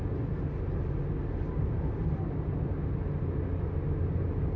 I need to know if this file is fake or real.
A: real